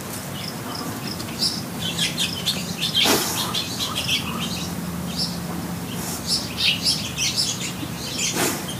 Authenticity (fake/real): real